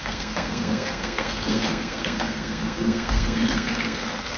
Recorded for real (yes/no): no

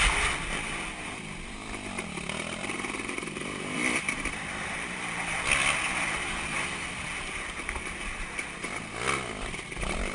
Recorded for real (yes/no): yes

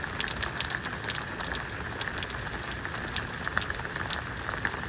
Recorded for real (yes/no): yes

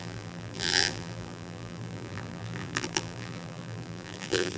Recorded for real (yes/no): no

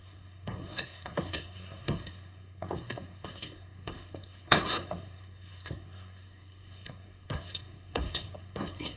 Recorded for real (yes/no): no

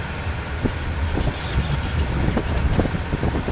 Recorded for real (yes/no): yes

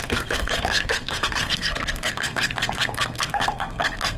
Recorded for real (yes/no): no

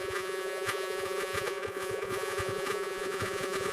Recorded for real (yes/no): no